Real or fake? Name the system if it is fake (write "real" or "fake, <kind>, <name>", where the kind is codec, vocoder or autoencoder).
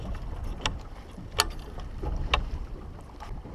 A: real